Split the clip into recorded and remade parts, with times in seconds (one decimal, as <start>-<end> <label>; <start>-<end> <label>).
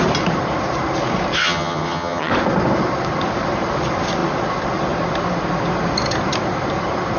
0.0-1.4 recorded; 1.4-2.3 remade; 2.3-7.2 recorded